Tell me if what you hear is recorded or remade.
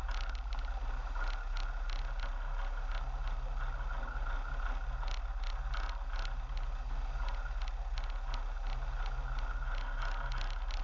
recorded